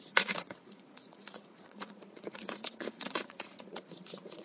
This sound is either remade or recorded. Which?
remade